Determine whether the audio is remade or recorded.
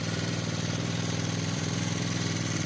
remade